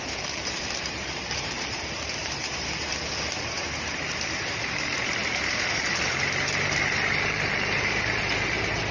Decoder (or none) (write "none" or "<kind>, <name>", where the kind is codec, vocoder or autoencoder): vocoder, BigVGAN v2